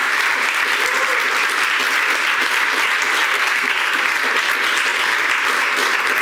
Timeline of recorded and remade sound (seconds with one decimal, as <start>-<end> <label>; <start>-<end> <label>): 0.0-3.3 recorded; 3.3-4.0 remade; 4.0-6.2 recorded